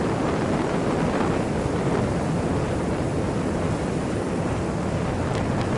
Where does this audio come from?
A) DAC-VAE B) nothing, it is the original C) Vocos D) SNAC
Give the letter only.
B